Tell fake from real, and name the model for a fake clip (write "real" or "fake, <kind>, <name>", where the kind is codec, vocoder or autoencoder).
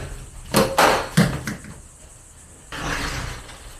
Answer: real